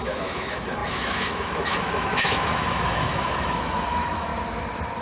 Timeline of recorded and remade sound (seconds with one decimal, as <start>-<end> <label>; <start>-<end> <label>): 0.0-4.3 remade; 4.3-5.0 recorded